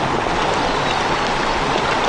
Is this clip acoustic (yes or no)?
yes